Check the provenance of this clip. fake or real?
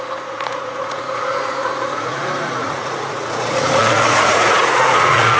fake